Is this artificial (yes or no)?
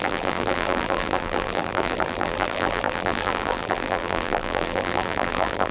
yes